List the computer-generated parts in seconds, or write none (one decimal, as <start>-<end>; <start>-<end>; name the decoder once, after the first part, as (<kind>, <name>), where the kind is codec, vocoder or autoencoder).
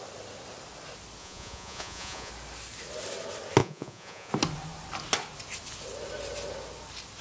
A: 1.2-2.3 (vocoder, Vocos); 3.6-4.3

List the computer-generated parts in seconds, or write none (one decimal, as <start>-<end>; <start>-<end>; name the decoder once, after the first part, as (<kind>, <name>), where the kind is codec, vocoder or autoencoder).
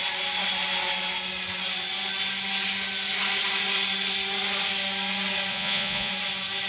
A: 5.5-6.1 (vocoder, Vocos)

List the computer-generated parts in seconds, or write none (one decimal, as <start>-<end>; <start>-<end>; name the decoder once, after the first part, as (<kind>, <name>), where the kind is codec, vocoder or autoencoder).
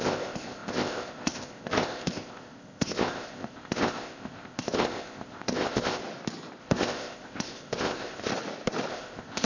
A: 0.0-6.0 (codec, ZipCodec); 6.6-8.3; 8.9-9.4